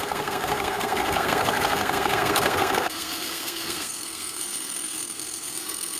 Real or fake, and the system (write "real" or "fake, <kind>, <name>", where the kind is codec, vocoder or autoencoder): fake, codec, SNAC